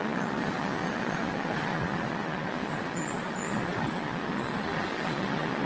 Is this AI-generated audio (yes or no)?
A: yes